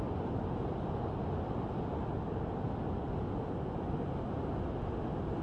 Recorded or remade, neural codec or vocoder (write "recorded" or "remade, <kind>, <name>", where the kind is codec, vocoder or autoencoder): recorded